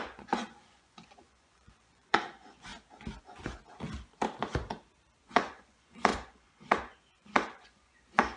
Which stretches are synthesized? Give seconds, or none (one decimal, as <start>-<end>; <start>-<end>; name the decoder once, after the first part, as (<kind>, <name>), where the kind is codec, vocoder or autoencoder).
0.0-2.7 (vocoder, Vocos); 3.2-3.6; 5.2-8.4